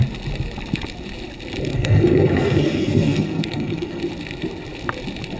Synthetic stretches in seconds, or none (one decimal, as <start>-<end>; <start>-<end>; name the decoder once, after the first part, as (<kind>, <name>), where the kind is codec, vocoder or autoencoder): 1.7-4.0 (codec, SNAC)